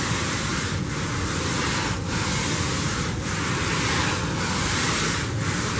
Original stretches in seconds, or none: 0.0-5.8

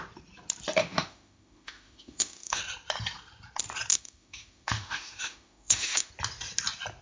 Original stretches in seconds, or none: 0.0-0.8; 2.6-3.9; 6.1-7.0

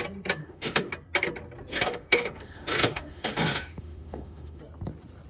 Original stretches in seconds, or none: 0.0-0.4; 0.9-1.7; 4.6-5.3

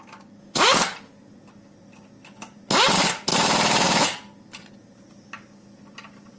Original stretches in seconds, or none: 0.0-6.4

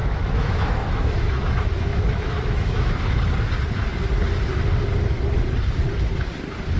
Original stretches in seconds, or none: 3.2-6.8